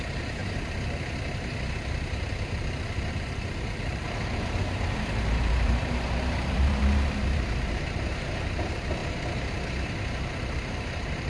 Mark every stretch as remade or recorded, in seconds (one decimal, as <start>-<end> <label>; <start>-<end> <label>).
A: 0.0-0.4 remade; 0.4-3.1 recorded; 3.1-9.0 remade; 9.0-9.8 recorded; 9.8-11.3 remade